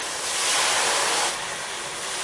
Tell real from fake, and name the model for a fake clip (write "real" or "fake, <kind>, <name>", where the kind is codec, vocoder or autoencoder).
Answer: real